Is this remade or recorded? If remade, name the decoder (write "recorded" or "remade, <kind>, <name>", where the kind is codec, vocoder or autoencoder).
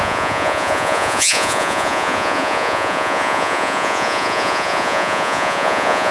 remade, vocoder, Vocos